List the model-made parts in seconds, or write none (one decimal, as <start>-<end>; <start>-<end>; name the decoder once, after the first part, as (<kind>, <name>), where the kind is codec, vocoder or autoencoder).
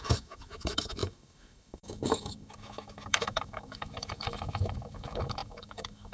0.0-6.1 (autoencoder, DAC-VAE)